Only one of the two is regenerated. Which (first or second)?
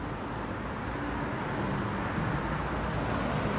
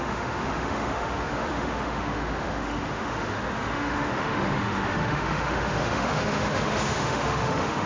second